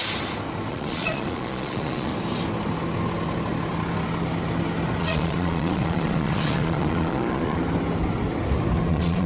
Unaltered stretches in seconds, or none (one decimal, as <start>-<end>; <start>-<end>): 0.0-0.7; 2.1-5.0; 7.6-8.9